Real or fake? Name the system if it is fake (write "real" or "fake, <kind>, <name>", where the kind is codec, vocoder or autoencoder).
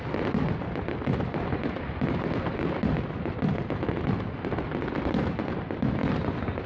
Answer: real